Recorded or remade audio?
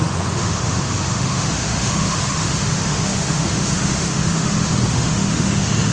remade